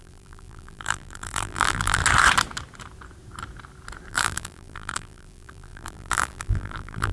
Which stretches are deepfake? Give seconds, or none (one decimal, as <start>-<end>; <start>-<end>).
0.0-2.0; 4.1-7.1